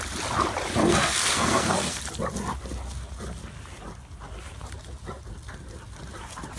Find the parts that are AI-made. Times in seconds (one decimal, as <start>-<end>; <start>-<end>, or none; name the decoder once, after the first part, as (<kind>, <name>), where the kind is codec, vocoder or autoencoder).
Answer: 0.8-2.0 (codec, SNAC)